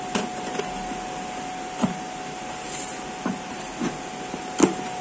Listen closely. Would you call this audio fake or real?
real